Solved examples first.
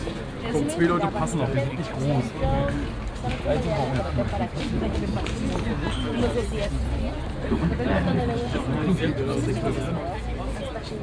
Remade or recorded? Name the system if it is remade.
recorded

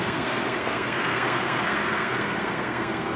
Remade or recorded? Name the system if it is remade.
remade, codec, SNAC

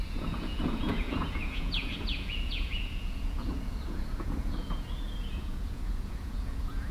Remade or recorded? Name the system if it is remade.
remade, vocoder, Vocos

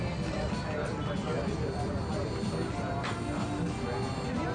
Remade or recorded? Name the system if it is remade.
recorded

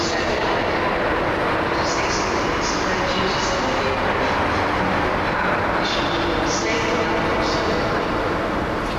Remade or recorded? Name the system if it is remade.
recorded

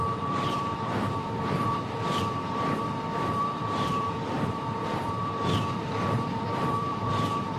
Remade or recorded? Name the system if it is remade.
remade, vocoder, BigVGAN v2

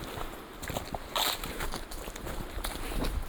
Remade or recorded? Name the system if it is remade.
recorded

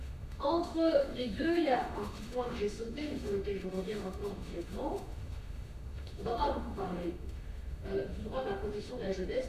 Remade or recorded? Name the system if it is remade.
remade, autoencoder, DAC-VAE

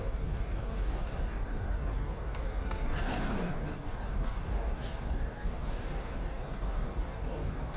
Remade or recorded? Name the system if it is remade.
remade, codec, DAC